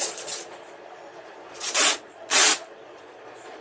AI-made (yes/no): yes